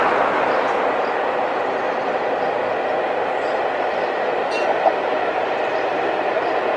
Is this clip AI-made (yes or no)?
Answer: no